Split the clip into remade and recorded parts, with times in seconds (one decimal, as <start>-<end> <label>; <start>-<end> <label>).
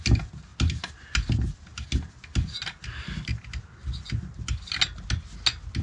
0.0-5.8 recorded